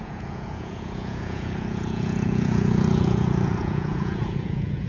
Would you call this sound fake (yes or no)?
yes